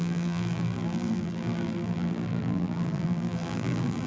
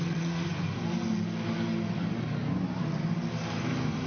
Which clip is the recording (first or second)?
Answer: second